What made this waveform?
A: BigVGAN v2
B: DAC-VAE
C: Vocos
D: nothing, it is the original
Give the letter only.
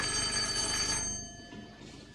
D